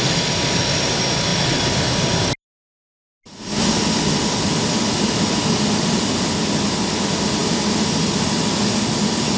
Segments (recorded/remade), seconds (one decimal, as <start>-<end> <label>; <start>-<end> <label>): 0.0-9.4 recorded